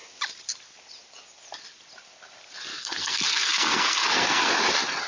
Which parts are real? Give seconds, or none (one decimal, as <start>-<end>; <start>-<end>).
0.0-2.7; 4.5-5.1